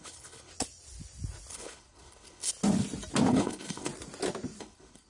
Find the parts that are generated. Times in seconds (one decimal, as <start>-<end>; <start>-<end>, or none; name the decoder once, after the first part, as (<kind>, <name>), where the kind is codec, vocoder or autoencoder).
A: 0.0-0.5 (codec, HILCodec); 1.5-2.5; 3.3-3.9; 4.6-5.1